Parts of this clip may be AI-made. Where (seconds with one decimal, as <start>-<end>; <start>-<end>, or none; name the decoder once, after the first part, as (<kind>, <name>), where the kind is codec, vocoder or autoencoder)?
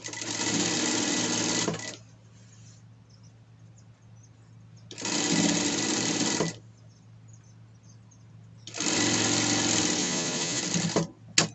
10.0-10.6 (vocoder, Vocos)